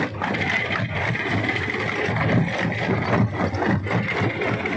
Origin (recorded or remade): recorded